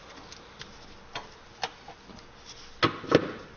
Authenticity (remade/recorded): recorded